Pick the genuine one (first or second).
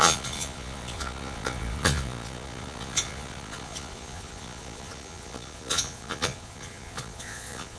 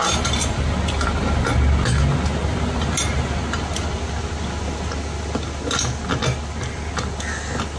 second